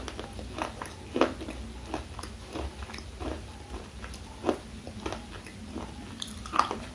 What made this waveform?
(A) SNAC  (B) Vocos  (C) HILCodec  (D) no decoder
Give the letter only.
D